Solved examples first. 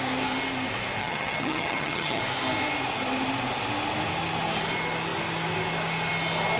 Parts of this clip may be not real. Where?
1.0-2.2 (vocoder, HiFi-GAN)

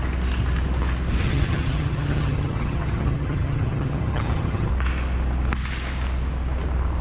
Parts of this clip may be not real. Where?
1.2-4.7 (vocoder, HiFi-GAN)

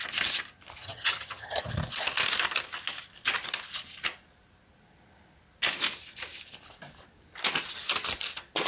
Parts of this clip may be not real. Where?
0.8-1.6 (vocoder, HiFi-GAN)

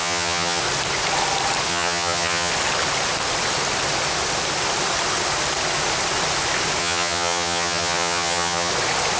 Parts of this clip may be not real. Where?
0.0-0.6 (vocoder, HiFi-GAN); 1.7-2.5; 6.8-8.7

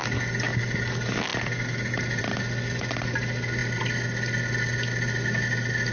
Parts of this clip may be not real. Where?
none

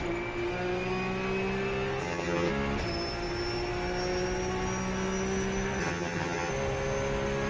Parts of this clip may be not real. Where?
2.0-2.5 (vocoder, HiFi-GAN); 5.8-6.5